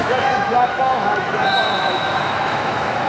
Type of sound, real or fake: fake